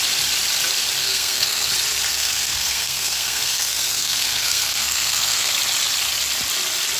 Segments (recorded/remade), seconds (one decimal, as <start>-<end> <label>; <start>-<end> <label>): 0.0-1.0 recorded; 1.0-1.7 remade; 1.7-2.1 recorded; 2.1-5.5 remade; 5.5-7.0 recorded